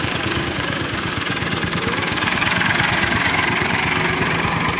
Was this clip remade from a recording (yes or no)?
yes